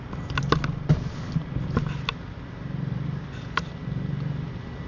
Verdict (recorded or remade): recorded